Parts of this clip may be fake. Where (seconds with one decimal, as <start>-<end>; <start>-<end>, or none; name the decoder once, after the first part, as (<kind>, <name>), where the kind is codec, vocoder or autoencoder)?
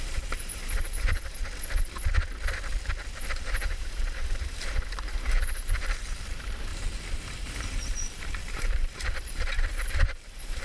0.0-1.4 (vocoder, BigVGAN v2); 3.6-6.7; 7.8-10.6